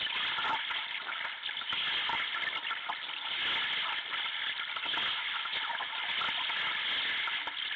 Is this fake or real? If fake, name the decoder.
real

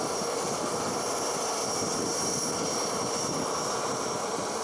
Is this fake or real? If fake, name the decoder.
real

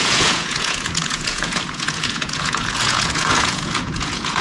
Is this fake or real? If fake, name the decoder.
fake, vocoder, Vocos